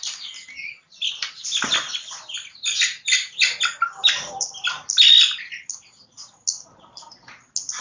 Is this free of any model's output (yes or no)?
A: yes